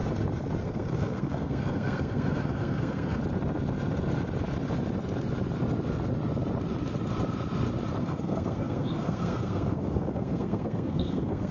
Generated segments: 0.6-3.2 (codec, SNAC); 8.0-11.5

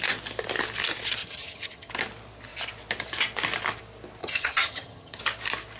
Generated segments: 1.2-1.9 (vocoder, HiFi-GAN); 4.2-5.2

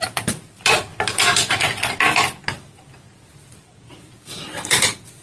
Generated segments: 0.0-0.9 (vocoder, BigVGAN v2); 3.4-5.2

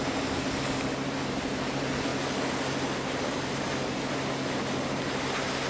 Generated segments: none

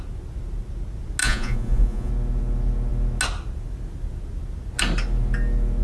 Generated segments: 1.2-2.1 (vocoder, Vocos)